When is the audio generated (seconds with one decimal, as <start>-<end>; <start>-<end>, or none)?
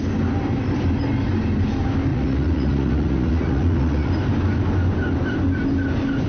2.1-4.1